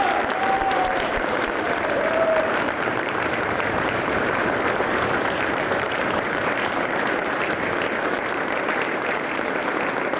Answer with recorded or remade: remade